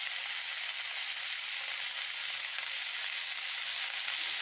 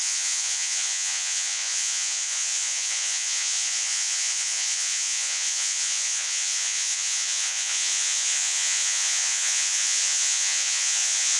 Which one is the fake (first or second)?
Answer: second